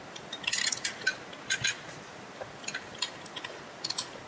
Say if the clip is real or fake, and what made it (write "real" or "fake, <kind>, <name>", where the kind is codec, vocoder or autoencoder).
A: real